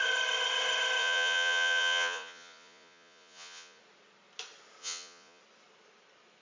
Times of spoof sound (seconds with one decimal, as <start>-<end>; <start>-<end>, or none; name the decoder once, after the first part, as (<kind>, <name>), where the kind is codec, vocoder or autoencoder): 1.0-3.8 (vocoder, Vocos); 4.8-5.4